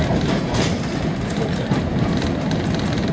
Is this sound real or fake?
real